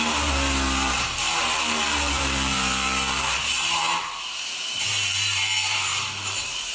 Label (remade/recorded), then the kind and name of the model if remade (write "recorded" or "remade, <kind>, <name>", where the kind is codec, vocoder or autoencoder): remade, vocoder, BigVGAN v2